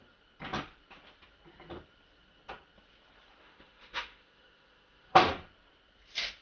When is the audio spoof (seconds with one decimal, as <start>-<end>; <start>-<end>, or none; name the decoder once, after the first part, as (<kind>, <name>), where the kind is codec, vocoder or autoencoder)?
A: 3.4-5.3 (autoencoder, DAC-VAE)